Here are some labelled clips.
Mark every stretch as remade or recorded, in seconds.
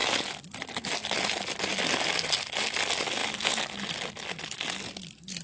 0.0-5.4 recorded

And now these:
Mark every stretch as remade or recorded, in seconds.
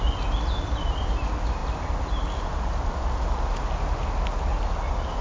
0.0-5.2 recorded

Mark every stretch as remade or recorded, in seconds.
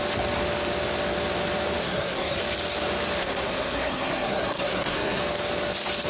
0.0-1.8 recorded; 1.8-2.4 remade; 2.4-3.2 recorded; 3.2-5.2 remade; 5.2-6.1 recorded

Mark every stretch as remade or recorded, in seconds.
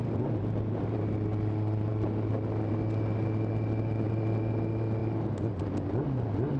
0.0-6.6 recorded